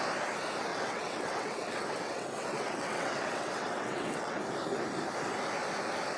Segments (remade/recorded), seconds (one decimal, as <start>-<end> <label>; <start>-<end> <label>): 0.0-0.7 recorded; 0.7-4.4 remade; 4.4-6.2 recorded